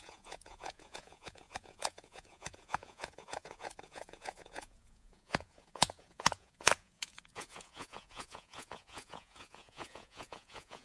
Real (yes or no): no